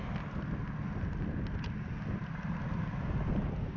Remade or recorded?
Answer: recorded